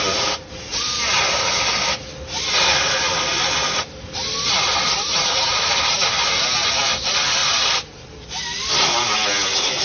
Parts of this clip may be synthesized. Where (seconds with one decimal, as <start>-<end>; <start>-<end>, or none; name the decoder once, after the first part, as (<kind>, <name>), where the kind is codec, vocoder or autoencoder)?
0.7-6.0 (vocoder, BigVGAN v2)